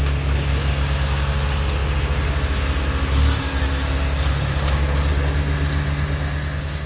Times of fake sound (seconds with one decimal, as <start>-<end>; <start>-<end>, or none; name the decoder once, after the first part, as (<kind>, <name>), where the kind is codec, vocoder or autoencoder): none